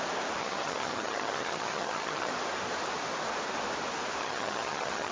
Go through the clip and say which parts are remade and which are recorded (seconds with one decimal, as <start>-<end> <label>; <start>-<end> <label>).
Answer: 0.0-0.4 recorded; 0.4-2.3 remade; 2.3-4.2 recorded; 4.2-5.1 remade